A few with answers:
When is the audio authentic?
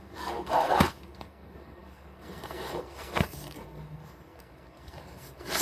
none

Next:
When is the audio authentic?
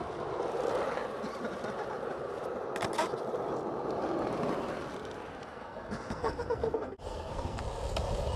0.0-5.4; 7.6-8.4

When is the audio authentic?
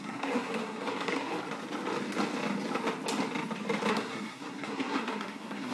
1.3-3.9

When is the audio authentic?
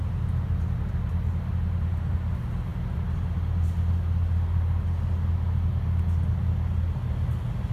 0.0-7.7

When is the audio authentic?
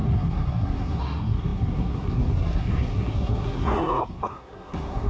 none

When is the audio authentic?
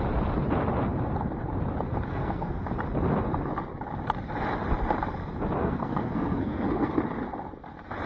0.0-2.1; 2.6-5.6; 6.9-8.1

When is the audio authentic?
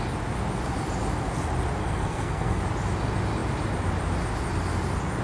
0.0-1.8; 2.6-5.2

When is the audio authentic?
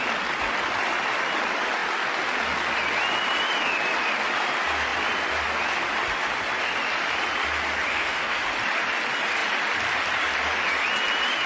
0.0-7.9; 8.4-11.5